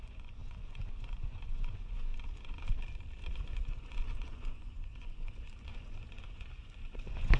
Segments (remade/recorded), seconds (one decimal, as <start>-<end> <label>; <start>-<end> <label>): 0.0-2.1 remade; 2.1-3.4 recorded; 3.4-7.4 remade